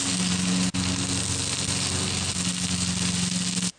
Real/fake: real